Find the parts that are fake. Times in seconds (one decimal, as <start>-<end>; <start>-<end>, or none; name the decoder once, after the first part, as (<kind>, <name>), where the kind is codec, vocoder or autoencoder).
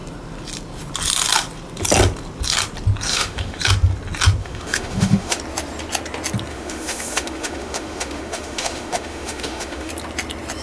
3.1-3.6 (autoencoder, DAC-VAE); 4.4-5.4; 6.5-9.9